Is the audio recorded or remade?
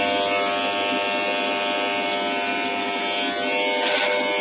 recorded